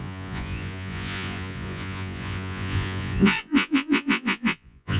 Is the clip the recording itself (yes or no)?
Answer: no